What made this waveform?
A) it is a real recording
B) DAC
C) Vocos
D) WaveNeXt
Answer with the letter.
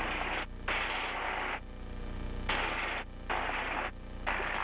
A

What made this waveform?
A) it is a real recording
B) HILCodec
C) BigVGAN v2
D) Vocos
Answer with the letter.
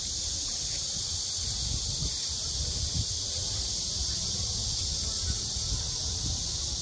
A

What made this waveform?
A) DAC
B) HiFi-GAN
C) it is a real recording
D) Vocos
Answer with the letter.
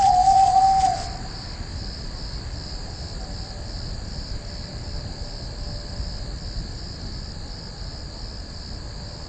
C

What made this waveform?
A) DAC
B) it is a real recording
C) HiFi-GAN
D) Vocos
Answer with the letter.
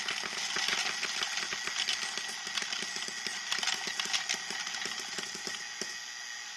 B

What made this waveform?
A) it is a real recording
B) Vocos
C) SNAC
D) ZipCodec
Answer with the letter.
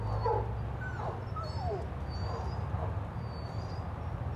A